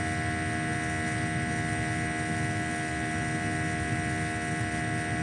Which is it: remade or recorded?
recorded